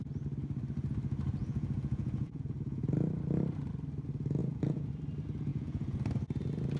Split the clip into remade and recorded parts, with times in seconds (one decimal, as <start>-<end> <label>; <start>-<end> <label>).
0.0-1.4 recorded; 1.4-2.8 remade; 2.8-4.4 recorded; 4.4-4.9 remade; 4.9-5.5 recorded; 5.5-6.0 remade; 6.0-6.8 recorded